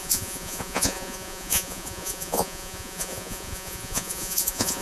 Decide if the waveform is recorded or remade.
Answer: remade